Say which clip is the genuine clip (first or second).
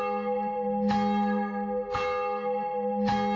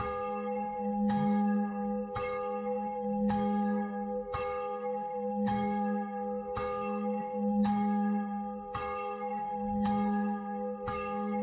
first